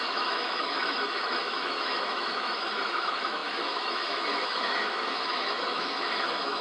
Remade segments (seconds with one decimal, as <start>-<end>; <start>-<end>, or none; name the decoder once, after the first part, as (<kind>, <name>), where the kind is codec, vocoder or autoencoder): 0.0-6.6 (autoencoder, DAC-VAE)